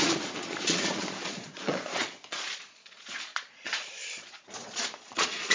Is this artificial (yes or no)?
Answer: yes